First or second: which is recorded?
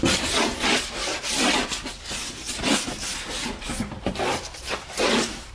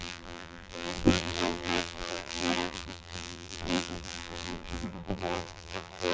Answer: first